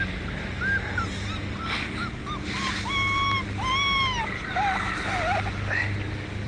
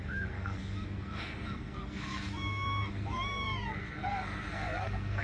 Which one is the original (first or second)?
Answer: first